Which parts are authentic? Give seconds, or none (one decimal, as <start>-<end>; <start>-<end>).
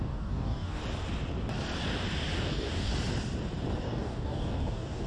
0.8-2.4; 2.9-3.8